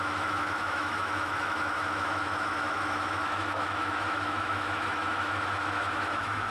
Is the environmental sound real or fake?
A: fake